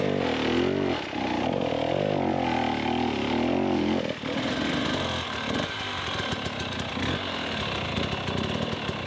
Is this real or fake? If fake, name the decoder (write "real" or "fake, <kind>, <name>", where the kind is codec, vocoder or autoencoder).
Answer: real